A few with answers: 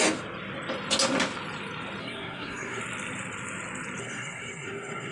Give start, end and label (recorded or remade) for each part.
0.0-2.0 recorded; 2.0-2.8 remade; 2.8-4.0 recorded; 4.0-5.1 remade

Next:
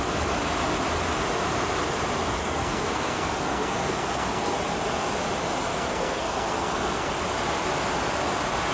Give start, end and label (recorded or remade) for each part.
0.0-2.4 recorded; 2.4-4.6 remade; 4.6-5.7 recorded; 5.7-7.1 remade; 7.1-8.7 recorded

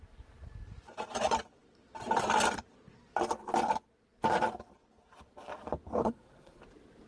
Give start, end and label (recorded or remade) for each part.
0.0-6.0 recorded; 6.0-6.6 remade; 6.6-7.1 recorded

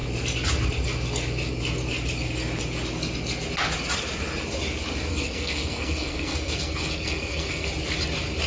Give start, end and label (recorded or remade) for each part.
0.0-5.1 recorded; 5.1-7.7 remade; 7.7-8.5 recorded